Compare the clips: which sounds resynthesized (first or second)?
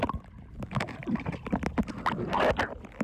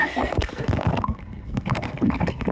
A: second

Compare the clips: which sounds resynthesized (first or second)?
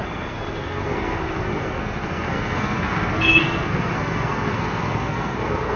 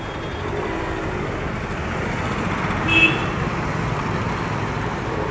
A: first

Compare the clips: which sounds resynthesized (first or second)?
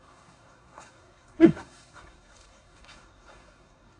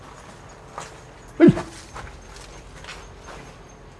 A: first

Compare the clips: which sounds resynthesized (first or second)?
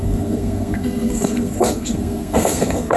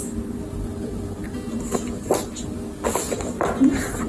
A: first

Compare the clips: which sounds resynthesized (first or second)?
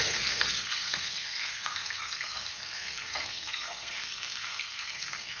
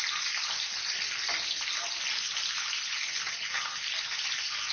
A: first